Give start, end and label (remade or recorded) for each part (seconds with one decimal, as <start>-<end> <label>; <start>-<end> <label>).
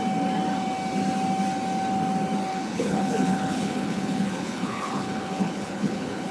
0.0-2.5 recorded; 2.5-6.3 remade